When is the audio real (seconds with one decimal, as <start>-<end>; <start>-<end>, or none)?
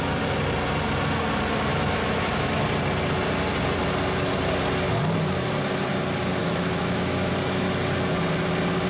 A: 0.0-1.7; 2.6-6.4; 7.3-8.9